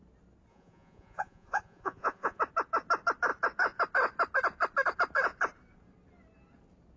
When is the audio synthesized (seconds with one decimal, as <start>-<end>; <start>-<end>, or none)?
0.5-2.4